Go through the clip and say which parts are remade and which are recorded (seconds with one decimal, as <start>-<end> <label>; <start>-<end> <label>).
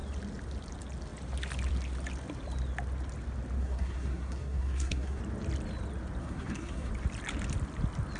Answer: 0.0-3.6 recorded; 3.6-5.2 remade; 5.2-6.2 recorded; 6.2-6.9 remade; 6.9-8.2 recorded